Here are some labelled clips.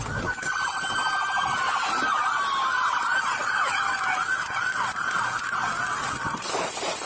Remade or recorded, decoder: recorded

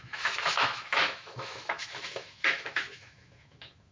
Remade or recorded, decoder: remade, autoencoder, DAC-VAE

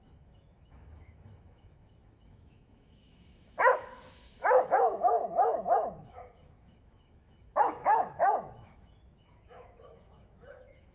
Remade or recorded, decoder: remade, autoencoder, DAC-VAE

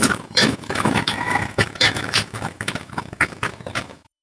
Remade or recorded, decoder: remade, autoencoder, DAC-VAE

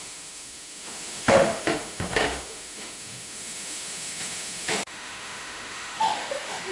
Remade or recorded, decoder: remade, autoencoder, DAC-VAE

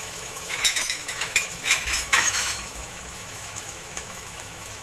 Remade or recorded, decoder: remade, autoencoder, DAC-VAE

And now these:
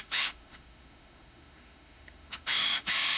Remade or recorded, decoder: remade, autoencoder, DAC-VAE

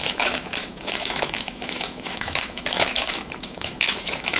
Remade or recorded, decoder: remade, autoencoder, DAC-VAE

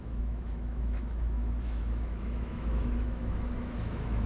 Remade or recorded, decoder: remade, autoencoder, DAC-VAE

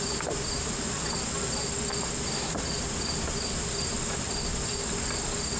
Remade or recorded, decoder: recorded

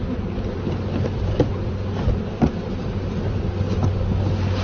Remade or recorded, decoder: recorded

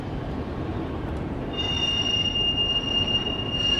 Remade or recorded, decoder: recorded